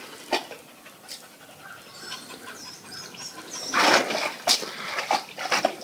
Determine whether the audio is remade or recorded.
recorded